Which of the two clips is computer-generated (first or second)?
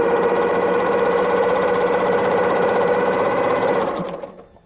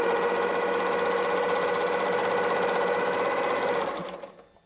first